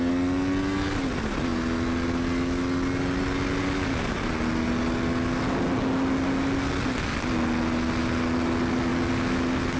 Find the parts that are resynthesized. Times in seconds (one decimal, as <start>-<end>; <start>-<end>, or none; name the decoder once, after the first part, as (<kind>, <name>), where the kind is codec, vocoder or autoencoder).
none